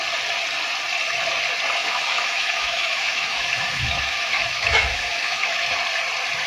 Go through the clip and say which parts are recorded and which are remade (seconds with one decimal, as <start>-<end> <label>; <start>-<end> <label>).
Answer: 0.0-1.8 recorded; 1.8-5.7 remade; 5.7-6.5 recorded